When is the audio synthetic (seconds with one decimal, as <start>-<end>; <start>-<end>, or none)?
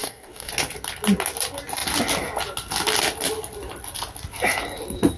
0.0-0.5